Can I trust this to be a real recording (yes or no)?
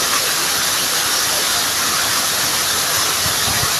yes